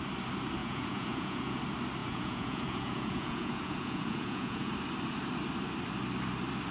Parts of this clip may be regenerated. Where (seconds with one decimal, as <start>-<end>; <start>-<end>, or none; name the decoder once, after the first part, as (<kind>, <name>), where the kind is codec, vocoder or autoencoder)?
0.6-1.6 (vocoder, Vocos); 2.0-4.7